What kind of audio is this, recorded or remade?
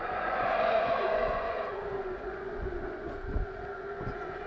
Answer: remade